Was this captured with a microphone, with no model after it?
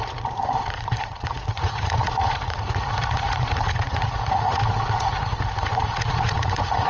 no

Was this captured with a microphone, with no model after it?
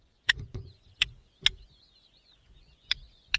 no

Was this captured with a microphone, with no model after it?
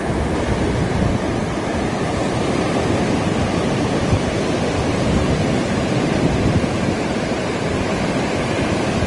no